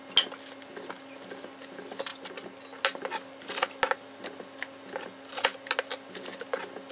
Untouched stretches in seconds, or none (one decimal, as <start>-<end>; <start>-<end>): 0.0-6.9